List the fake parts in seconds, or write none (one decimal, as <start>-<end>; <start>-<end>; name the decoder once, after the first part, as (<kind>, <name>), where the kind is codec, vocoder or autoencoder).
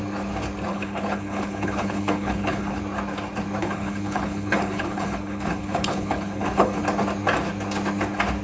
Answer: 0.7-2.8 (codec, HILCodec); 3.6-6.8